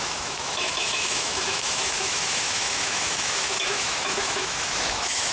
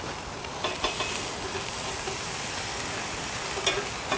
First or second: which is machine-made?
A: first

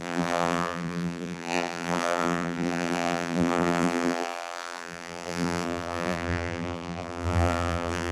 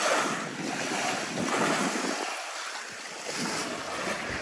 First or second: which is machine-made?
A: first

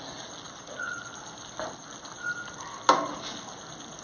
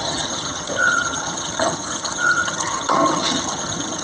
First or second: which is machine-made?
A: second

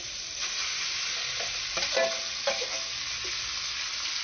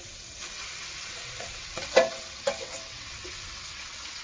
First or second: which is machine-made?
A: second